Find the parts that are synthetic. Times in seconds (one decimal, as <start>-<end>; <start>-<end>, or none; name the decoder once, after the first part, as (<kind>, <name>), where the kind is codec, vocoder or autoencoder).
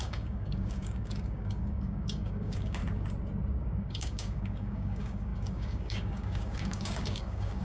0.0-2.8 (codec, DAC); 3.6-7.6